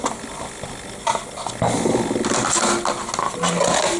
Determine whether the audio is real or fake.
real